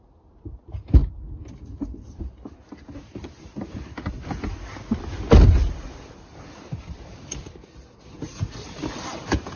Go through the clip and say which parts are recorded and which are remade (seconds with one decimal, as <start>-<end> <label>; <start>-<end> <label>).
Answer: 0.0-9.6 recorded